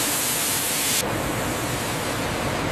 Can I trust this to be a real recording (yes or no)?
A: yes